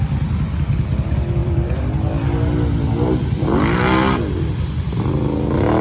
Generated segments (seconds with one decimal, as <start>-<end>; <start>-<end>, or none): 1.4-1.9